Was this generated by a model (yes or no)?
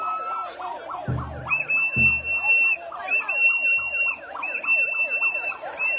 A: no